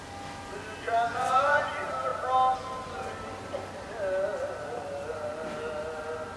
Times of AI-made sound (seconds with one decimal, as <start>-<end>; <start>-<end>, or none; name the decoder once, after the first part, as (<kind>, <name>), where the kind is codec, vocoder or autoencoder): 1.1-1.7 (vocoder, Vocos)